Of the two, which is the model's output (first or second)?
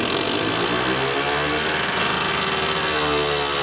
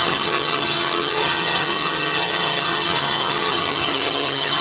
second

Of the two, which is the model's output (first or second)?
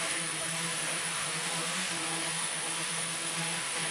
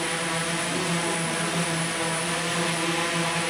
first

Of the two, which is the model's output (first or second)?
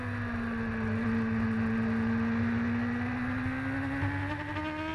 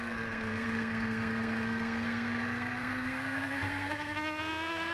second